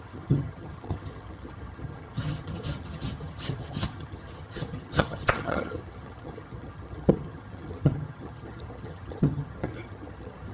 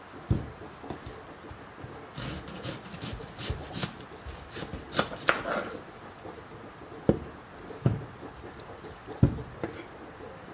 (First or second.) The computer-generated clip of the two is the first